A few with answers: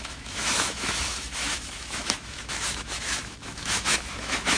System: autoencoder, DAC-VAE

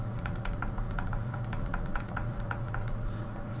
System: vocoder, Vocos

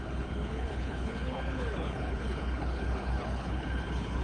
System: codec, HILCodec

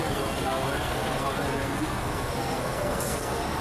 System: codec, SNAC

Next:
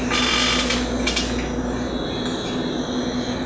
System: none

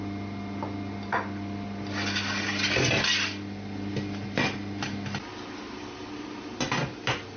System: none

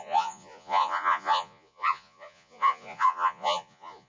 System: vocoder, Vocos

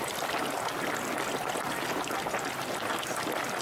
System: none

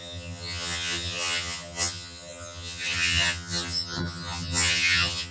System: vocoder, HiFi-GAN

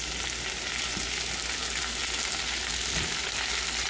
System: none